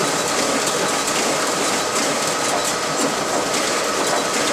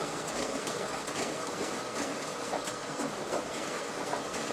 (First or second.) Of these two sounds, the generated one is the second